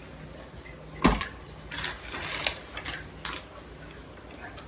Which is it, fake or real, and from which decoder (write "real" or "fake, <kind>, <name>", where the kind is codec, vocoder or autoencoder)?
real